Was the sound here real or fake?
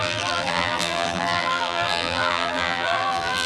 fake